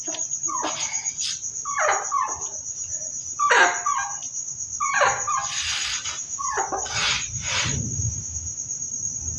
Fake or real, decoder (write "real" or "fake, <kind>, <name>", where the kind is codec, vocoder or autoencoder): real